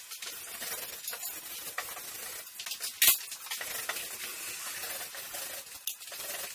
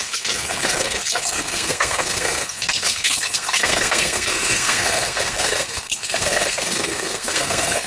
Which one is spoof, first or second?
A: second